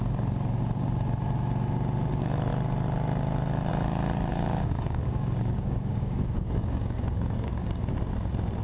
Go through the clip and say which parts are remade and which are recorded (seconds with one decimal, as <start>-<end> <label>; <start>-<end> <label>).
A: 0.0-4.3 recorded; 4.3-7.8 remade; 7.8-8.6 recorded